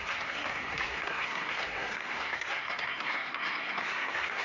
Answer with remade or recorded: remade